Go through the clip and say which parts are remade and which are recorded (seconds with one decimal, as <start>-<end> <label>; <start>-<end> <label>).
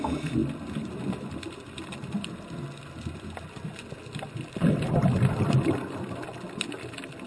0.0-7.3 recorded